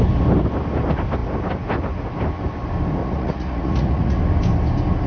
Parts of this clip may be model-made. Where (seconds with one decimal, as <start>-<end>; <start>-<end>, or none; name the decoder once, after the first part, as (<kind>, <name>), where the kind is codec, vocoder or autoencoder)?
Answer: 3.0-4.2 (vocoder, Vocos)